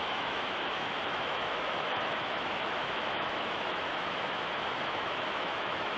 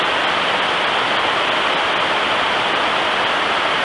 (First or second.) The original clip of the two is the second